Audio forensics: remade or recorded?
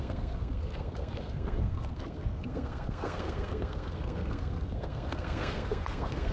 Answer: remade